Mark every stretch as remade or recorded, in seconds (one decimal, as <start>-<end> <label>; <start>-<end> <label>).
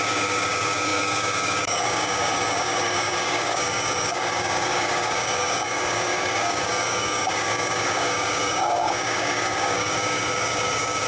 0.0-11.1 remade